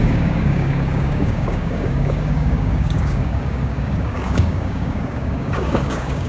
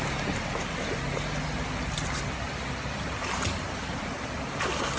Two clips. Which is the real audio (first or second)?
second